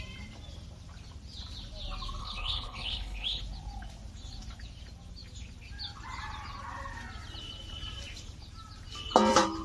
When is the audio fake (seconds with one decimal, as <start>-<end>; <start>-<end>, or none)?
2.2-3.4